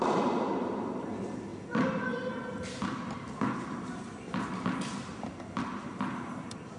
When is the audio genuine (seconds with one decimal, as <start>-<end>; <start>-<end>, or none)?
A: 0.0-6.8